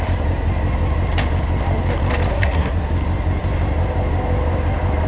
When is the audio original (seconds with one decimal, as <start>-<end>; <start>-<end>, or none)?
0.0-2.3; 2.9-5.1